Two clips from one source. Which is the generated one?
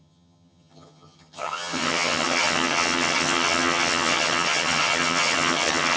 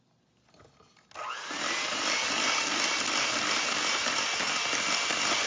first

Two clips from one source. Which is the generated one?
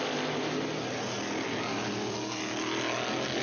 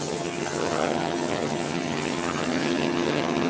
second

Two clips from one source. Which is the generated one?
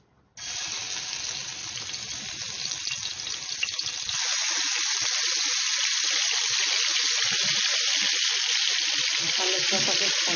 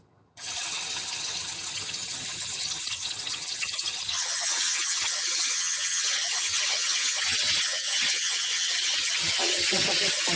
second